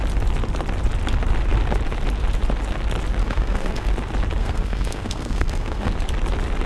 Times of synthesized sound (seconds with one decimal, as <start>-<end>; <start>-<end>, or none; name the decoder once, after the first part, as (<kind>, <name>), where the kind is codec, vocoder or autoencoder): 3.2-3.9 (codec, SNAC); 4.4-5.9